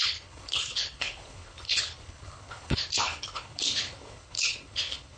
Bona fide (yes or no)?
no